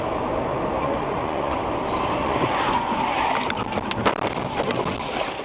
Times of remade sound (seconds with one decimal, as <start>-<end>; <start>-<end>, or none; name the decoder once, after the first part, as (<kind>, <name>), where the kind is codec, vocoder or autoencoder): 0.5-1.6 (vocoder, Vocos); 2.2-3.0